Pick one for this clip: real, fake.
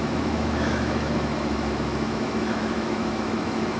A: fake